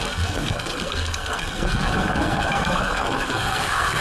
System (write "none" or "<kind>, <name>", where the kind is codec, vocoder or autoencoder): codec, SNAC